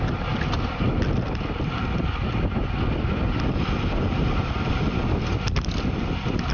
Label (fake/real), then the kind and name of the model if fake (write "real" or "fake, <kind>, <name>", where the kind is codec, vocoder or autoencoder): real